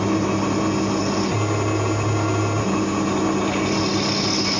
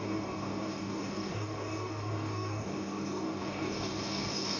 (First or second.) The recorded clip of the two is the first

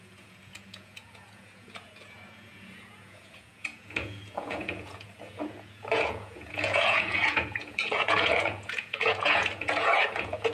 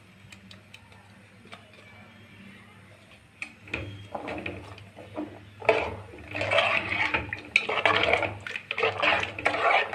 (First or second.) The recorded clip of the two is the second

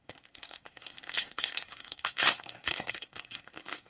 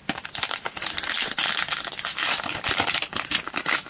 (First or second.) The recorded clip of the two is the second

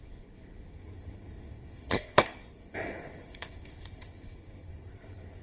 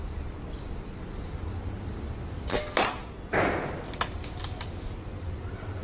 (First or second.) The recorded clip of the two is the second